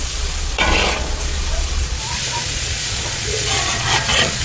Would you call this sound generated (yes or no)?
yes